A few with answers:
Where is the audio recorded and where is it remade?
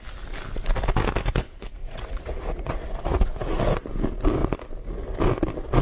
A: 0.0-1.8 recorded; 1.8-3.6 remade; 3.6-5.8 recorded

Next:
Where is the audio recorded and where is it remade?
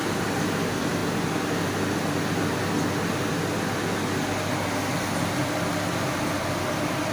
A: 0.0-1.0 remade; 1.0-5.0 recorded; 5.0-7.1 remade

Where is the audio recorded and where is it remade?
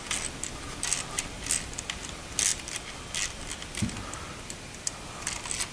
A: 0.0-5.7 recorded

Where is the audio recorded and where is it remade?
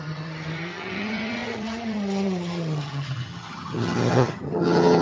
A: 0.0-5.0 remade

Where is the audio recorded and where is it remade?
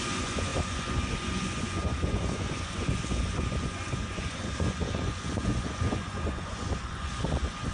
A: 0.0-7.7 remade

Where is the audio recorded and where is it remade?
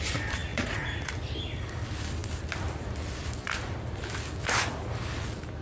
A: 0.0-0.5 recorded; 0.5-1.1 remade; 1.1-5.6 recorded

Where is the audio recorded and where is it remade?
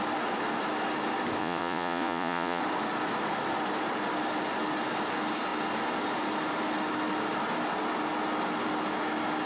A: 0.0-1.4 recorded; 1.4-2.6 remade; 2.6-9.5 recorded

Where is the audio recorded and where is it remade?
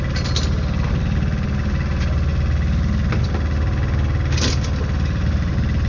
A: 0.0-5.9 recorded